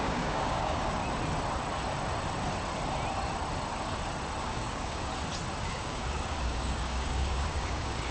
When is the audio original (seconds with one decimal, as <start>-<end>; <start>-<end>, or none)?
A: 1.0-4.4; 5.1-5.6